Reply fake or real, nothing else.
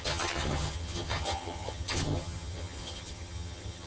fake